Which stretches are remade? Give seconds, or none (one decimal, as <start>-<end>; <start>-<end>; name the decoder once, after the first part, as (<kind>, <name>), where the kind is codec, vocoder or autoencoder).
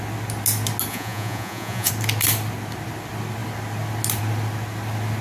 0.9-1.9 (vocoder, Vocos)